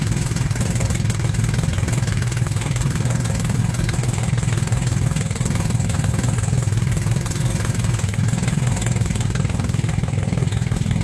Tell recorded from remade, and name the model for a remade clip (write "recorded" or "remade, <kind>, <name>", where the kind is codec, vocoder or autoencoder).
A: remade, codec, SNAC